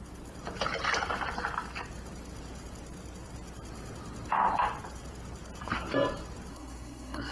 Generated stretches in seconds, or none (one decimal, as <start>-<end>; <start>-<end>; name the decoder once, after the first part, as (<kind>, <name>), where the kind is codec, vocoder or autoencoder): 6.5-7.3 (codec, SNAC)